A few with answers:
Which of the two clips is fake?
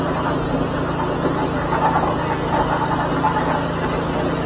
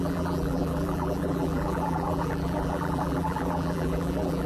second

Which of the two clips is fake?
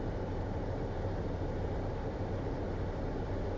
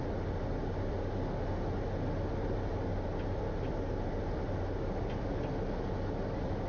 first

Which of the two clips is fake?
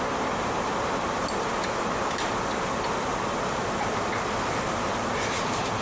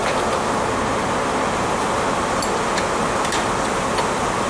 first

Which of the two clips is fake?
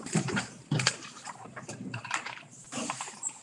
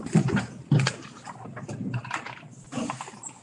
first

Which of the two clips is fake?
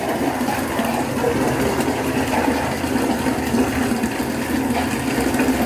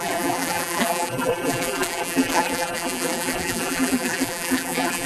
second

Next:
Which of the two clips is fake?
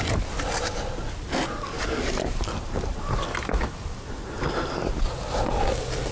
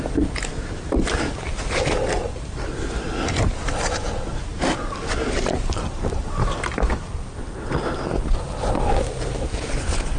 second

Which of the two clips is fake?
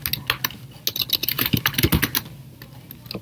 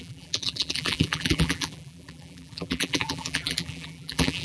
second